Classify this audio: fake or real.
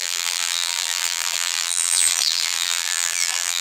fake